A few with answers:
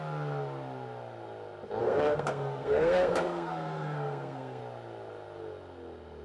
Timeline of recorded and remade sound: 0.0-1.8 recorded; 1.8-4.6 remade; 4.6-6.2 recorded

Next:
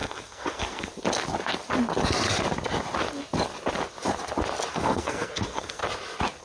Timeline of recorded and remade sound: 0.0-0.9 remade; 0.9-4.7 recorded; 4.7-5.8 remade; 5.8-6.4 recorded